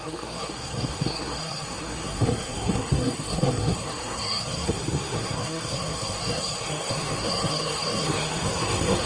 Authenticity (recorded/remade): remade